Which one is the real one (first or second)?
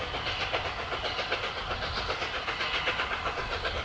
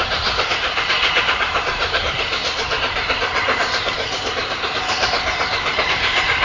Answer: first